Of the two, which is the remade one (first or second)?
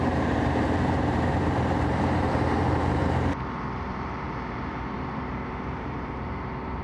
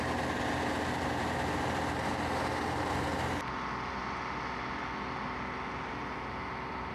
first